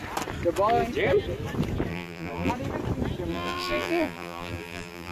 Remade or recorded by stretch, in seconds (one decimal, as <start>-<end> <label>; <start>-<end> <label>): 0.0-1.9 recorded; 1.9-2.5 remade; 2.5-3.3 recorded; 3.3-5.1 remade